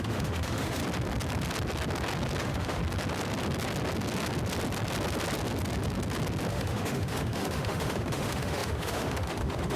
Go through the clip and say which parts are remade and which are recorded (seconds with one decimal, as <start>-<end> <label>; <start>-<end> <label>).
0.0-0.8 remade; 0.8-2.4 recorded; 2.4-2.8 remade; 2.8-6.5 recorded; 6.5-9.8 remade

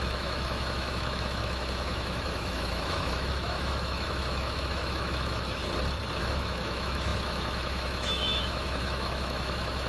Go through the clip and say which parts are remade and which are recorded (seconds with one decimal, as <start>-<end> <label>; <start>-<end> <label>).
0.0-5.6 remade; 5.6-6.2 recorded; 6.2-9.9 remade

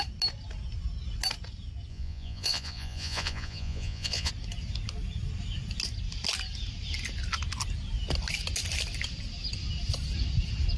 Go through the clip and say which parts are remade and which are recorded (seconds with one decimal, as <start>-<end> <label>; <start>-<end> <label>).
0.0-1.9 recorded; 1.9-4.3 remade; 4.3-10.8 recorded

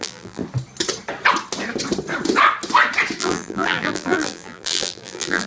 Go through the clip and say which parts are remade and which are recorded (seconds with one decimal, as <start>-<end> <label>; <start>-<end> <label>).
0.0-0.4 remade; 0.4-3.2 recorded; 3.2-5.5 remade

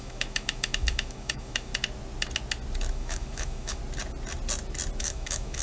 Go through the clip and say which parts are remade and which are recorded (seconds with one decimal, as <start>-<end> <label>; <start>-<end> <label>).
0.0-1.7 remade; 1.7-2.9 recorded; 2.9-3.8 remade; 3.8-5.0 recorded; 5.0-5.6 remade

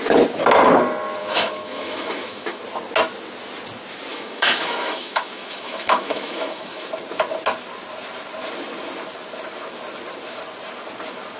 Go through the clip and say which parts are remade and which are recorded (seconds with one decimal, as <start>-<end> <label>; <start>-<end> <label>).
0.0-1.2 recorded; 1.2-2.6 remade; 2.6-4.1 recorded; 4.1-6.9 remade; 6.9-11.4 recorded

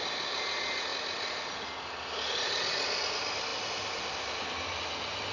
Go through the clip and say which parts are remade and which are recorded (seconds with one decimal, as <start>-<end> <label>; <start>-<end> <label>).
0.0-0.9 recorded; 0.9-1.5 remade; 1.5-5.3 recorded

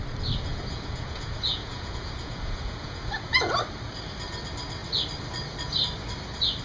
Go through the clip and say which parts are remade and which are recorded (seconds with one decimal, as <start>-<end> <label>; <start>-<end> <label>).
0.0-0.5 recorded; 0.5-3.5 remade; 3.5-6.6 recorded